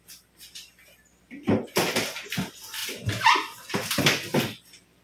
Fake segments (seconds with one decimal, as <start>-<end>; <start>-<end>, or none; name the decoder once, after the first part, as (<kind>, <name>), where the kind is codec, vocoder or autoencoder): none